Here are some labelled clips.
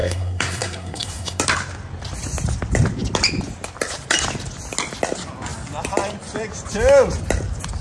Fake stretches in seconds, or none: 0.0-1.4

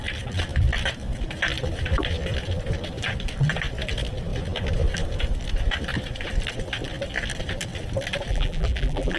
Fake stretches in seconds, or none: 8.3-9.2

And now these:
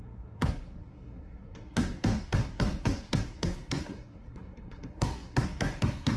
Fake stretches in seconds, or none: 0.0-6.2

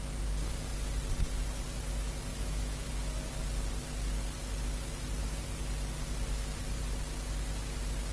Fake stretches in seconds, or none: 2.3-2.9